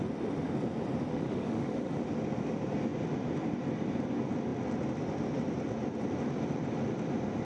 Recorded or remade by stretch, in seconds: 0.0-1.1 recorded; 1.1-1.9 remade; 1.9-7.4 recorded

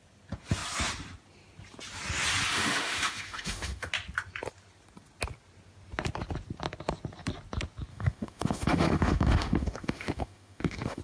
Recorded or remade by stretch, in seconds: 0.0-2.5 recorded; 2.5-3.9 remade; 3.9-7.9 recorded; 7.9-11.0 remade

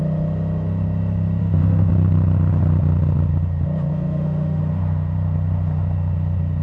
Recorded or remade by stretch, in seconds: 0.0-1.4 recorded; 1.4-1.9 remade; 1.9-3.9 recorded; 3.9-4.6 remade; 4.6-6.6 recorded

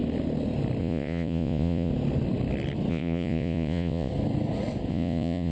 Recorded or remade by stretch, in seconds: 0.0-0.8 recorded; 0.8-1.9 remade; 1.9-2.9 recorded; 2.9-4.1 remade; 4.1-4.9 recorded; 4.9-5.5 remade

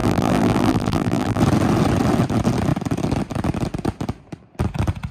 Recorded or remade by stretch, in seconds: 0.0-1.4 remade; 1.4-5.1 recorded

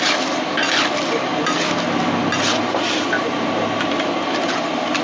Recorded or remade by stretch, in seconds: 0.0-1.3 remade; 1.3-3.9 recorded; 3.9-5.0 remade

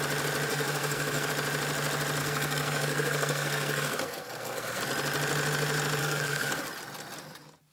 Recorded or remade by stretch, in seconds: 0.0-0.5 recorded; 0.5-1.3 remade; 1.3-2.2 recorded; 2.2-4.8 remade; 4.8-6.0 recorded; 6.0-6.6 remade; 6.6-7.7 recorded

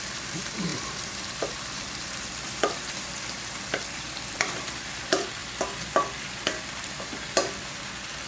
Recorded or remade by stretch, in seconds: 0.0-5.4 remade; 5.4-7.6 recorded; 7.6-8.3 remade